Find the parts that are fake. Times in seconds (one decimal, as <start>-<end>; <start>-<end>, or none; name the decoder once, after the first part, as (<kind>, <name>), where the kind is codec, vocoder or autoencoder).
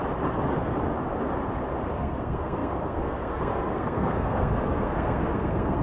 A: 1.9-5.8 (codec, SNAC)